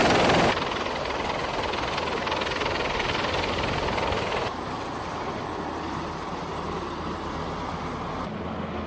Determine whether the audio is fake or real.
real